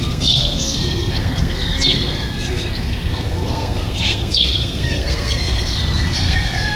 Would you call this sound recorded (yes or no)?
no